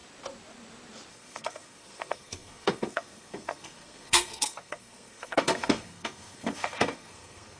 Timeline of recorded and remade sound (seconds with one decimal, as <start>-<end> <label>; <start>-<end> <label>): 0.0-1.1 recorded; 1.1-7.6 remade